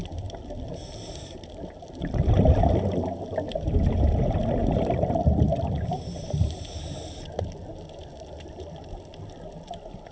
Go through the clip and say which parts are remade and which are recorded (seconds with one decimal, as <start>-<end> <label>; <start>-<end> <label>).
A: 0.0-10.1 recorded